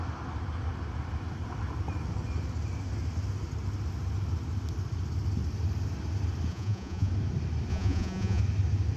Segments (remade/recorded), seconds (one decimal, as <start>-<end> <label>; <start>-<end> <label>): 0.0-6.5 recorded; 6.5-7.1 remade; 7.1-7.7 recorded; 7.7-8.4 remade; 8.4-9.0 recorded

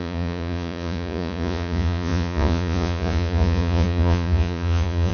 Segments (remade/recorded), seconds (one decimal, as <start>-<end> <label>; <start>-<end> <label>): 0.0-5.1 remade

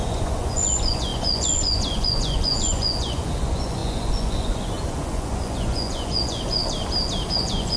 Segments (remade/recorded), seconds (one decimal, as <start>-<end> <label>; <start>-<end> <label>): 0.0-6.6 remade; 6.6-7.3 recorded; 7.3-7.8 remade

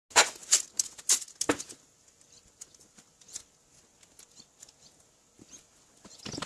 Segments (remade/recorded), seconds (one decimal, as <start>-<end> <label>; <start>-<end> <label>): 0.0-6.5 recorded

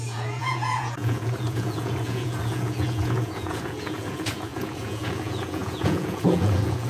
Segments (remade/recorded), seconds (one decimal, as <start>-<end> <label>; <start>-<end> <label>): 0.0-6.9 remade

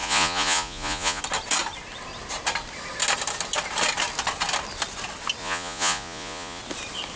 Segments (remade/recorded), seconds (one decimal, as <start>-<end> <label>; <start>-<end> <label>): 0.0-1.2 remade; 1.2-5.4 recorded; 5.4-6.6 remade; 6.6-7.2 recorded